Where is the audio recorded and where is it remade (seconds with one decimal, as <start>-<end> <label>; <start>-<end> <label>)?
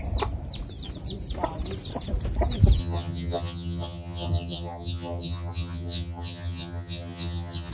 0.0-2.8 recorded; 2.8-7.7 remade